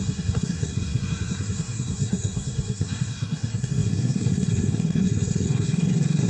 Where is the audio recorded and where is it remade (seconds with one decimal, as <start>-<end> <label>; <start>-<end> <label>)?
0.0-6.3 remade

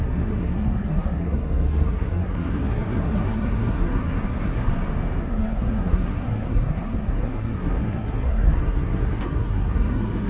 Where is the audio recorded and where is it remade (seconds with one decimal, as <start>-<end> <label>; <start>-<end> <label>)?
0.0-4.7 remade; 4.7-5.2 recorded; 5.2-10.3 remade

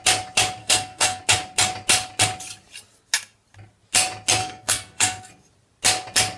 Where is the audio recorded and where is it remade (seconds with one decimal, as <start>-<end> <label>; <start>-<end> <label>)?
0.0-0.6 recorded; 0.6-1.2 remade; 1.2-4.4 recorded; 4.4-5.3 remade; 5.3-6.4 recorded

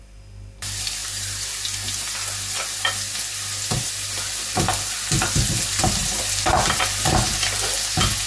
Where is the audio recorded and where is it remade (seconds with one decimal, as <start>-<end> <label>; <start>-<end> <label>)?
0.0-8.3 recorded